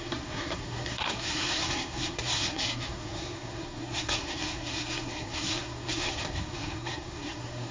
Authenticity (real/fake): fake